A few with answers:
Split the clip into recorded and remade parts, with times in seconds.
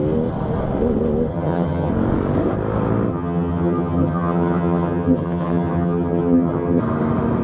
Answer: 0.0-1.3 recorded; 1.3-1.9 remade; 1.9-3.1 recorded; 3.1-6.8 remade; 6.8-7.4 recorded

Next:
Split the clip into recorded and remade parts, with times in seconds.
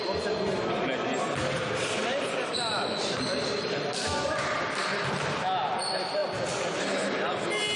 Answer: 0.0-2.0 recorded; 2.0-5.2 remade; 5.2-7.8 recorded